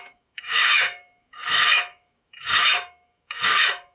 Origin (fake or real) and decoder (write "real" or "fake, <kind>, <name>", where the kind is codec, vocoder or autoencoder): fake, autoencoder, DAC-VAE